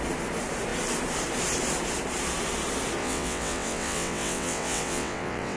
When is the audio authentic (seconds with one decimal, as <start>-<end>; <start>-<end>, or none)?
0.0-3.0